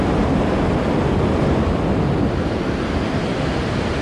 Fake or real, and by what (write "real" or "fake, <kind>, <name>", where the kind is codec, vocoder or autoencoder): real